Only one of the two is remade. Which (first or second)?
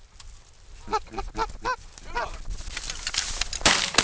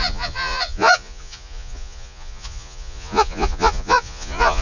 second